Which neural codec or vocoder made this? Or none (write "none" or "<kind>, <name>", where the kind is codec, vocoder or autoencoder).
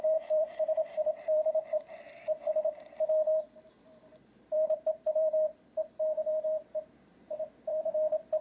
vocoder, BigVGAN v2